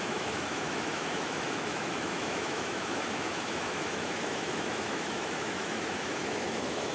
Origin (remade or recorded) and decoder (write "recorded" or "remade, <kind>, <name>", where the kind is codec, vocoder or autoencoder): remade, autoencoder, DAC-VAE